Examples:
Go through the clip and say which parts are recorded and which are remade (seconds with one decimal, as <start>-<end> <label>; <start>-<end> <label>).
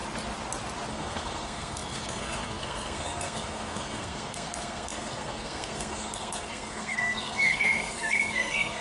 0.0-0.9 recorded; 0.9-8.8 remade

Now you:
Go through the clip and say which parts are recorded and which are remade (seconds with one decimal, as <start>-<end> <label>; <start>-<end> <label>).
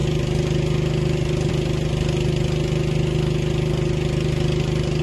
0.0-5.0 recorded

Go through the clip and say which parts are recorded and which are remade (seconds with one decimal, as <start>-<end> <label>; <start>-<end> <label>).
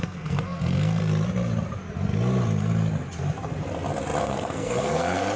0.0-1.0 remade; 1.0-4.2 recorded; 4.2-5.4 remade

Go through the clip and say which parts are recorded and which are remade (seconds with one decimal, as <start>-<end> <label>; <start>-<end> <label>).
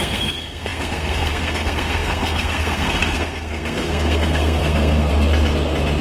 0.0-5.1 remade; 5.1-6.0 recorded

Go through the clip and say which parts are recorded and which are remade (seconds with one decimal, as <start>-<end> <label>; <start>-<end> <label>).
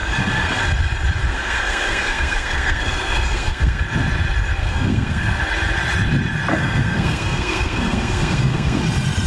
0.0-0.6 remade; 0.6-1.3 recorded; 1.3-3.8 remade; 3.8-4.6 recorded; 4.6-5.4 remade; 5.4-6.5 recorded; 6.5-8.8 remade; 8.8-9.3 recorded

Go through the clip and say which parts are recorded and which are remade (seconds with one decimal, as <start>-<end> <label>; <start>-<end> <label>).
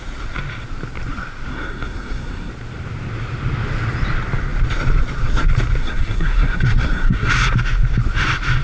0.0-1.5 recorded; 1.5-2.5 remade; 2.5-5.8 recorded; 5.8-7.3 remade; 7.3-8.6 recorded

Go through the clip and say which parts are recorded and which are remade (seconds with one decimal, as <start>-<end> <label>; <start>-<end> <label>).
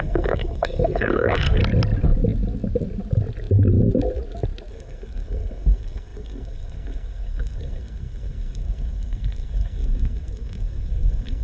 0.0-1.6 remade; 1.6-4.7 recorded; 4.7-11.4 remade